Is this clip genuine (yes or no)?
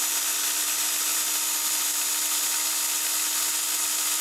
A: yes